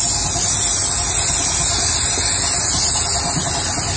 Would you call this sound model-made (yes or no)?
no